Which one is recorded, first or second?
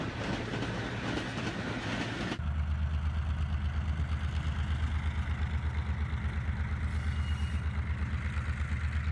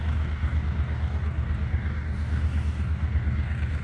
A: first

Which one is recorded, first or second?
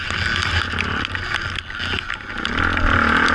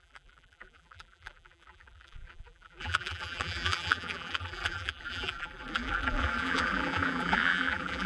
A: first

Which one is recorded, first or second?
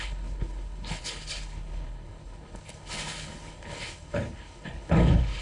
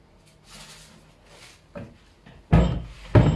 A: second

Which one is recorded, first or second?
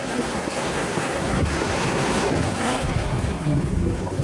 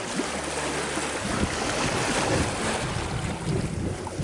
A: second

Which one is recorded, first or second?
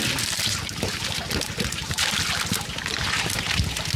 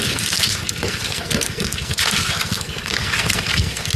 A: first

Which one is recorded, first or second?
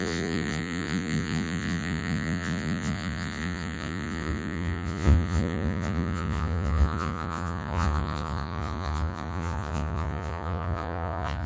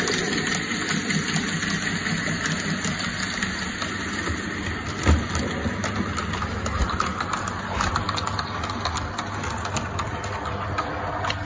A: second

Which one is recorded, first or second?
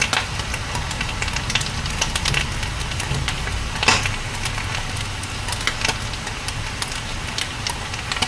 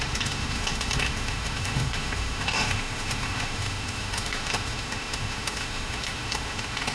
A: first